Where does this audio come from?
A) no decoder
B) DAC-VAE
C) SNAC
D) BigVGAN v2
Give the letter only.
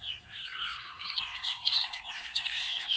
C